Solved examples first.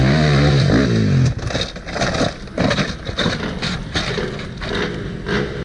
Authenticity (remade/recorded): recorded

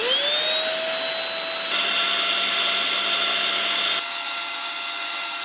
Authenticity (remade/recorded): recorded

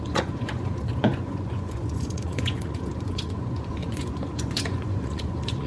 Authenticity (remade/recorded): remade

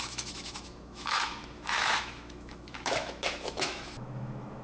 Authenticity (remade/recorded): remade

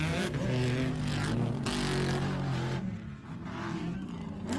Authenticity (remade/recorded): recorded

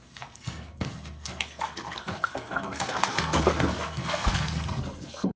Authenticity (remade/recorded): remade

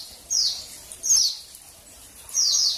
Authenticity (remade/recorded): recorded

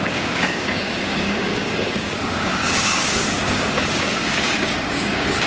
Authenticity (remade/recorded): remade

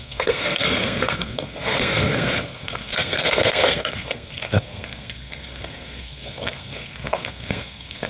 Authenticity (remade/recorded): remade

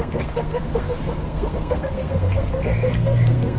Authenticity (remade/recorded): remade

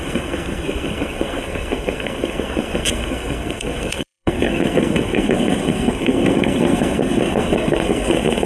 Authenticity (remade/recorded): remade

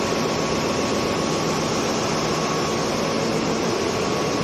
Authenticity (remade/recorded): recorded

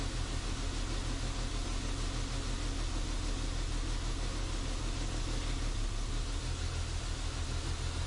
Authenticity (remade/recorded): recorded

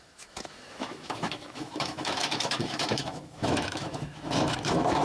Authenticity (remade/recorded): remade